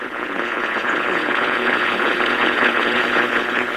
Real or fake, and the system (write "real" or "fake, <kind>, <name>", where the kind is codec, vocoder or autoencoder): fake, vocoder, Vocos